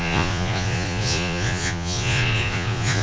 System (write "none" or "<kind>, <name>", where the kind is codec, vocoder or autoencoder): vocoder, Vocos